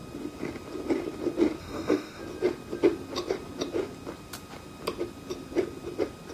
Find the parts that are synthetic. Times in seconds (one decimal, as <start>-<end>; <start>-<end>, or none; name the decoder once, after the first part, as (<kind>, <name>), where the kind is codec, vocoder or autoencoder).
1.6-2.2 (codec, DAC)